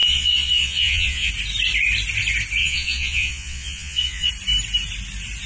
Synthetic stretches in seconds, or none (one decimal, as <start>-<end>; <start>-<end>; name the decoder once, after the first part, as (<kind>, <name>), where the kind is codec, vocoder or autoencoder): 0.0-1.3 (vocoder, Vocos); 2.6-4.3